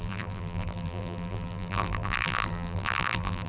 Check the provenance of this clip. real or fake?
fake